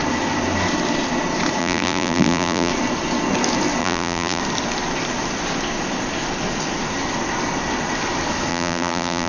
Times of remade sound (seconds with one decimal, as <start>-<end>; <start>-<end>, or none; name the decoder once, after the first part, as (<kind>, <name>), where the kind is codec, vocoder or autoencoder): 1.6-2.7 (vocoder, BigVGAN v2); 3.8-4.4; 8.5-9.3